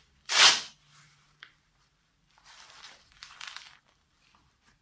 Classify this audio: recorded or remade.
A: remade